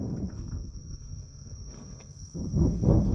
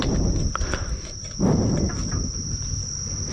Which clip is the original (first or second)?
second